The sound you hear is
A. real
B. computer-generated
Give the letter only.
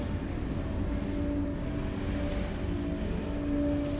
A